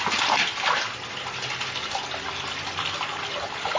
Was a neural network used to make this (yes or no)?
no